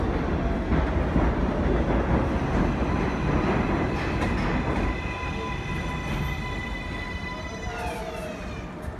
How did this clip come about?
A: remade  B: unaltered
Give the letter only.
B